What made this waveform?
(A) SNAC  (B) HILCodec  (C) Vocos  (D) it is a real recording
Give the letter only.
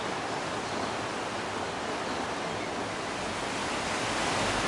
D